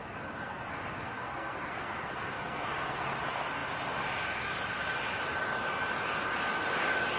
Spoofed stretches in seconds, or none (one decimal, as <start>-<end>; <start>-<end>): 0.0-3.2